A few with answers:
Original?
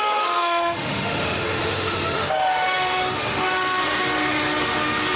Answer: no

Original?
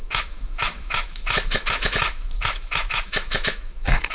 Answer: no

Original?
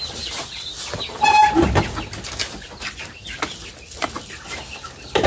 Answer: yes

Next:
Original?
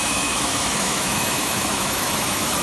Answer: no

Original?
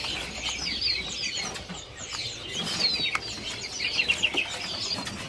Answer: yes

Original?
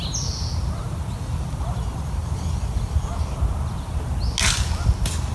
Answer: yes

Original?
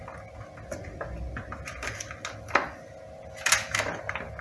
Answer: yes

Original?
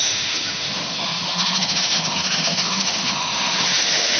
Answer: no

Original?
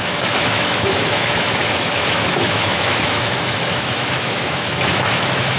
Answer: no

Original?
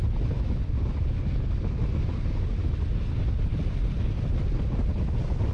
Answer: yes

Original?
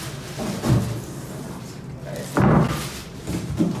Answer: yes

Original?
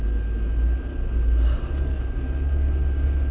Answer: yes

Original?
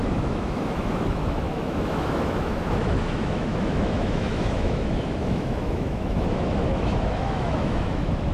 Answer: no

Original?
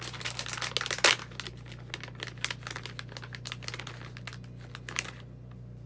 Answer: yes